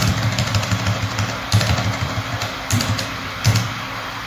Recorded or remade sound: remade